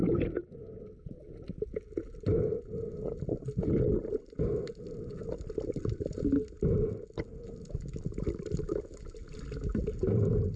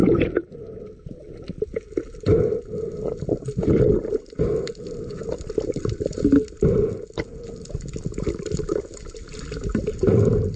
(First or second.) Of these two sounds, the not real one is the second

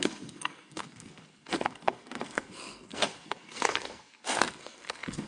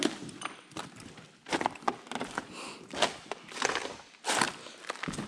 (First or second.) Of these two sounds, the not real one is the first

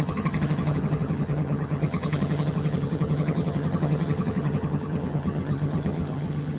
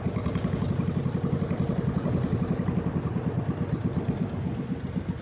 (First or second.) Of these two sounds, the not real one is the first